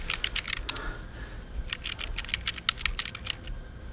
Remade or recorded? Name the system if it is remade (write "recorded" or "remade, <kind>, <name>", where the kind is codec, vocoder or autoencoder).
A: recorded